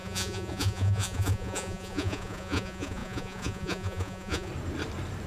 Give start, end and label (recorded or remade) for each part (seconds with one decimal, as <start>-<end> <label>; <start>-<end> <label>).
0.0-4.5 remade; 4.5-5.3 recorded